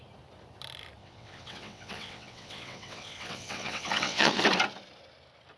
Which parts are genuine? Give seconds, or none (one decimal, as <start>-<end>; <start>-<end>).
0.0-1.0; 4.4-5.6